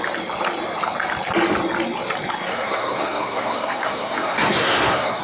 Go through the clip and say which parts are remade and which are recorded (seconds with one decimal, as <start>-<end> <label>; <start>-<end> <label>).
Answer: 0.0-2.5 recorded; 2.5-5.2 remade